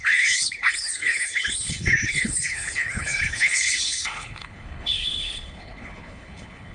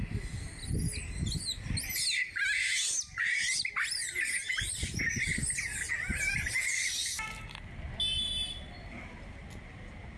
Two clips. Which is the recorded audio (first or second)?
second